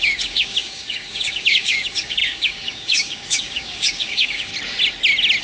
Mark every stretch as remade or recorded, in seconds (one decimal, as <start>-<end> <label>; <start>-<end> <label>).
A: 0.0-4.5 remade; 4.5-5.4 recorded